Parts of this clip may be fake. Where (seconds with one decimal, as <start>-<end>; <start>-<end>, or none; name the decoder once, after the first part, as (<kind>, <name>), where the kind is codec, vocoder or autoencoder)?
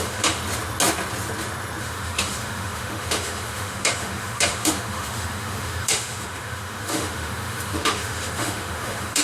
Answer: 0.0-0.4 (autoencoder, DAC-VAE); 1.8-9.2